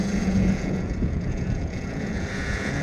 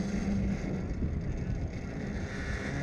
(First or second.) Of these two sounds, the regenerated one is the first